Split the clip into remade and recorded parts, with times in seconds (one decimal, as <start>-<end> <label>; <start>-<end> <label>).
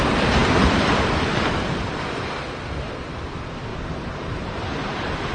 0.0-3.7 recorded; 3.7-5.3 remade